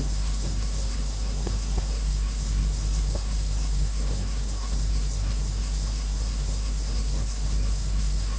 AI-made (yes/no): yes